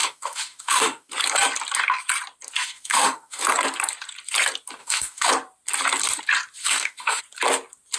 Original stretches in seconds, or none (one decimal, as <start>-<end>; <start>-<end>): 1.1-2.6; 3.4-4.8; 5.3-6.6; 7.2-8.0